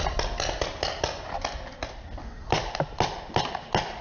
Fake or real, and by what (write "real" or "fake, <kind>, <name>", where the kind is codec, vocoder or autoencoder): real